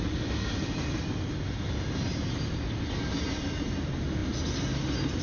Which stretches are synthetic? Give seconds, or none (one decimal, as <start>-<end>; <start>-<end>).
none